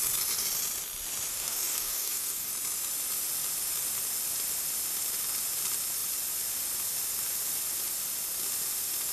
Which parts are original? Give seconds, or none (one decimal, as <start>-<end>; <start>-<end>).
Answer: 0.0-1.3; 2.5-9.1